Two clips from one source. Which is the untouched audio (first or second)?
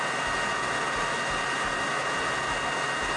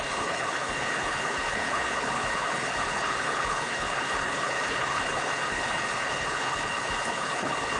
first